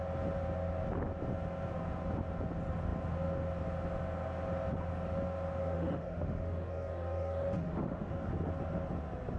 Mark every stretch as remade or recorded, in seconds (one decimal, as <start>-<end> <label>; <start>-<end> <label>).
0.0-5.6 recorded; 5.6-8.1 remade; 8.1-9.4 recorded